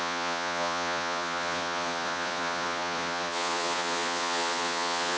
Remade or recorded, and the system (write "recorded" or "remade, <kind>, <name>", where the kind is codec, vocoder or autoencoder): remade, vocoder, Vocos